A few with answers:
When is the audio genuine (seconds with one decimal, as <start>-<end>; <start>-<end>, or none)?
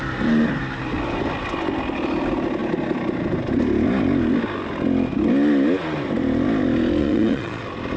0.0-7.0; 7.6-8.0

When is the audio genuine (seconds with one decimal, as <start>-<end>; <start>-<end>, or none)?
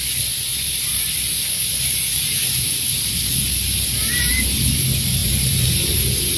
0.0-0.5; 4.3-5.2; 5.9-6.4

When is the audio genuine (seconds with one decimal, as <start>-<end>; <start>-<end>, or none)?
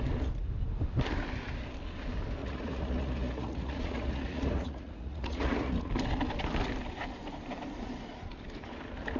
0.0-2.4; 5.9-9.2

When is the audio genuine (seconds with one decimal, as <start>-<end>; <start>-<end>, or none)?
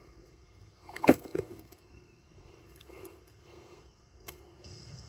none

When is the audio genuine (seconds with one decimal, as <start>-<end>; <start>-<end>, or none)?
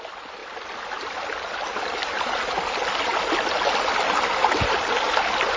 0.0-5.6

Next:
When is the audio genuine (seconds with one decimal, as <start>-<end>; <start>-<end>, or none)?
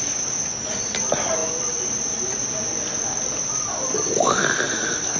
1.4-3.5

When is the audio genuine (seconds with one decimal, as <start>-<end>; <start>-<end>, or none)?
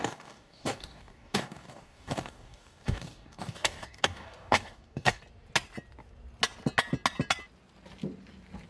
5.2-8.7